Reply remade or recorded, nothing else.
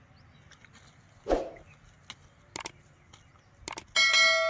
recorded